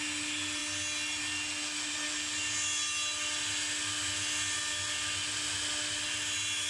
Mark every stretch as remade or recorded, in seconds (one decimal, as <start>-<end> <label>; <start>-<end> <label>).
0.0-6.7 recorded